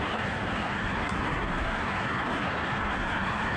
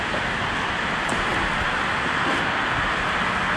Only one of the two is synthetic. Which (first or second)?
first